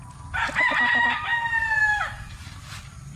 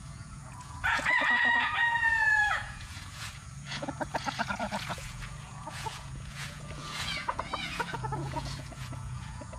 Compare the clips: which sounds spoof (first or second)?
second